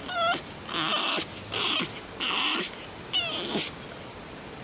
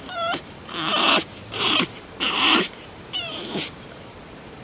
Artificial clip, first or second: second